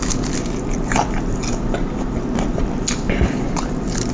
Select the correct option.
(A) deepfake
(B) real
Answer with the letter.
B